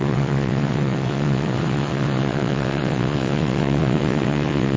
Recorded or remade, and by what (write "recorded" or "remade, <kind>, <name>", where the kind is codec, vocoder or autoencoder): remade, vocoder, WaveNeXt